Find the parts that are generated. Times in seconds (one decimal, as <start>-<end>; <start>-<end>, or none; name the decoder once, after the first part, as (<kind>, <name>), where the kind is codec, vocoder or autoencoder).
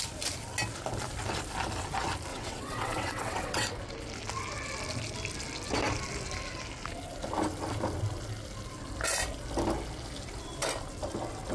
2.3-3.7 (vocoder, WaveNeXt)